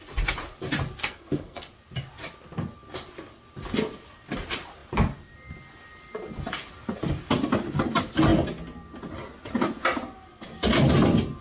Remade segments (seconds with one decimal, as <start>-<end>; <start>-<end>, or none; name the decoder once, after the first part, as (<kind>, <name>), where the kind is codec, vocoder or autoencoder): 1.0-1.7 (codec, SNAC)